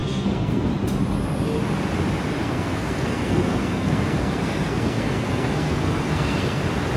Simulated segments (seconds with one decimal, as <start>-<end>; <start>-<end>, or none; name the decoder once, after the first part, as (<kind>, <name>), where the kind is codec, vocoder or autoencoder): 0.0-0.7 (codec, SNAC); 2.4-6.6